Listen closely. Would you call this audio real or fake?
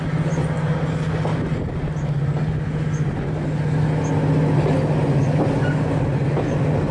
real